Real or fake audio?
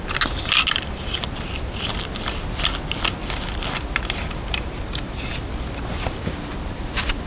real